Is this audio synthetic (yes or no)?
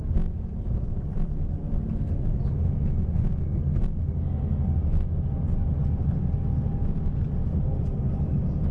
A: no